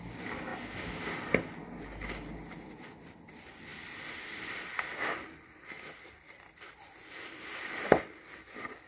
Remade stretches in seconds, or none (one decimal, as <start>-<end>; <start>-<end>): none